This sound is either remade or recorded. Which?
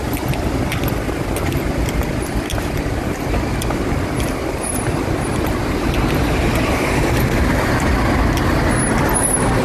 recorded